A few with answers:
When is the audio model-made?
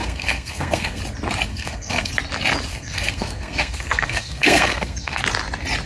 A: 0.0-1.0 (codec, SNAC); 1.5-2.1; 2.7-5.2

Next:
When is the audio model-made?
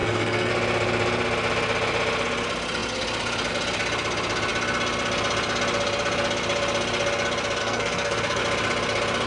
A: 0.0-0.5 (codec, SNAC); 7.6-8.4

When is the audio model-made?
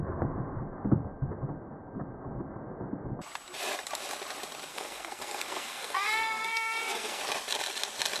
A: 4.7-7.2 (codec, SNAC)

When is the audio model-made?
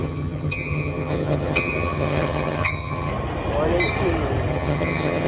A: 0.0-3.1 (vocoder, HiFi-GAN); 4.5-5.3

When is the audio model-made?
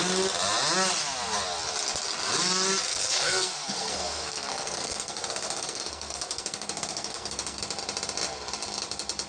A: 2.9-7.6 (codec, SNAC)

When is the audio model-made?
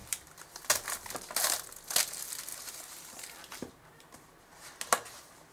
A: 2.5-3.7 (vocoder, BigVGAN v2)